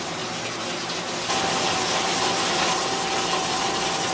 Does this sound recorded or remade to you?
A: recorded